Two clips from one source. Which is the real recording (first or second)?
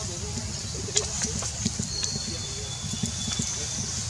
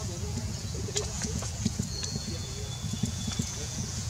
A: first